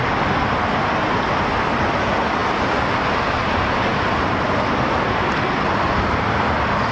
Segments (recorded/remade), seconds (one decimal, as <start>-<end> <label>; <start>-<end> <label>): 0.0-6.9 recorded